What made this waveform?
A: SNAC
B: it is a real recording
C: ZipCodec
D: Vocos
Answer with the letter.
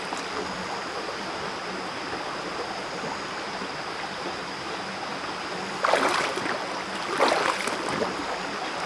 B